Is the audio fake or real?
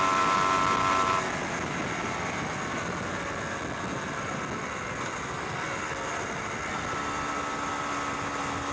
real